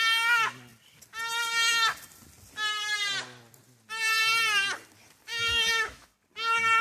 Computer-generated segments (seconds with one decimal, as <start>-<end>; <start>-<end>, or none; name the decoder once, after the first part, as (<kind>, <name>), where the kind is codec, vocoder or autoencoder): 5.3-6.1 (autoencoder, DAC-VAE)